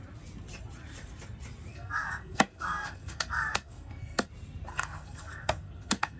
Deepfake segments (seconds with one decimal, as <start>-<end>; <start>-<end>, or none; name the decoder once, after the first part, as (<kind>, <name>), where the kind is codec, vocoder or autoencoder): 1.7-4.3 (codec, SNAC); 4.7-6.2